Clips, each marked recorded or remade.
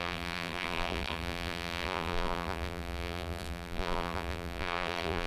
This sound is remade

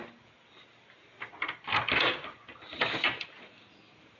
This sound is remade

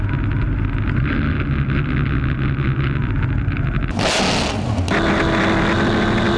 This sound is recorded